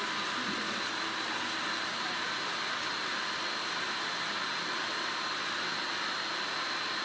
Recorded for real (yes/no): yes